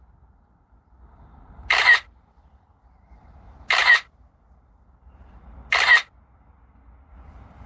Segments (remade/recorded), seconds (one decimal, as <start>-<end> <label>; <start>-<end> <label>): 0.0-7.7 recorded